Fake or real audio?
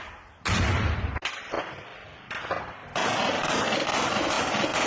real